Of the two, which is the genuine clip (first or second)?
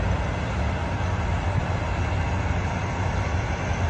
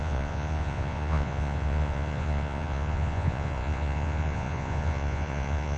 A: first